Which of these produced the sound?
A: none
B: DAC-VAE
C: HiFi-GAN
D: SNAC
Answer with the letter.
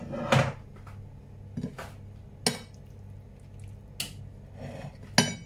A